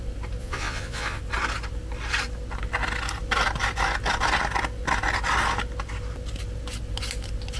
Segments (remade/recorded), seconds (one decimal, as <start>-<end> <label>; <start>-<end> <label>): 0.0-0.4 recorded; 0.4-1.2 remade; 1.2-7.6 recorded